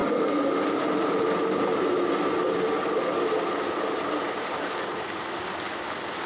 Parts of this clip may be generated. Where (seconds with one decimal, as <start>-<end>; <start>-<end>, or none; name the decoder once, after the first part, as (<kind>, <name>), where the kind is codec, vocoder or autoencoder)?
none